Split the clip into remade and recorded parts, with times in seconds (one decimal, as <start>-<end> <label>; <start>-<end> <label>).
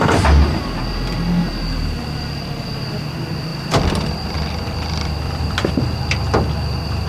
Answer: 0.0-0.5 recorded; 0.5-1.5 remade; 1.5-3.5 recorded; 3.5-5.7 remade; 5.7-7.1 recorded